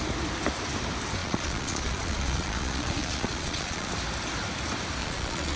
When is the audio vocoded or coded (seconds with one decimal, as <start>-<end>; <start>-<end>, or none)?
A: 1.2-3.9; 5.0-5.6